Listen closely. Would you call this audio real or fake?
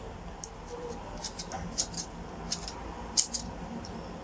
real